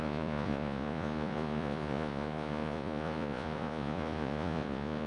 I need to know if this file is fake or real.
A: fake